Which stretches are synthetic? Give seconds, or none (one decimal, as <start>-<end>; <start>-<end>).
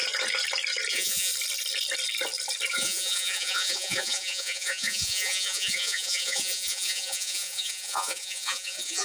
0.9-1.3; 2.7-9.0